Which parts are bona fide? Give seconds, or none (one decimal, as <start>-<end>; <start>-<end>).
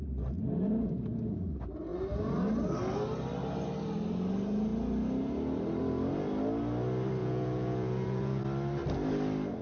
0.0-7.2; 8.4-9.6